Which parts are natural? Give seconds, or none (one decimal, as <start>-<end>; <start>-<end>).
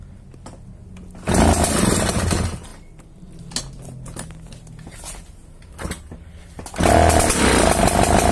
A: 0.0-8.3